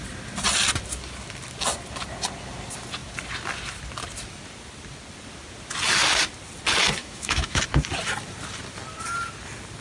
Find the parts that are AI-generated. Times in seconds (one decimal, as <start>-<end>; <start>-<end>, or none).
7.0-7.6